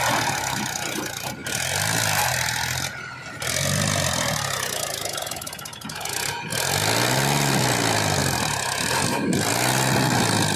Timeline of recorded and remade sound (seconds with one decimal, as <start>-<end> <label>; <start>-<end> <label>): 0.0-10.6 recorded